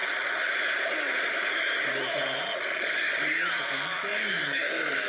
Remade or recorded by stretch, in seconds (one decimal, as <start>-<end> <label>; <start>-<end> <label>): 0.0-4.1 recorded; 4.1-5.1 remade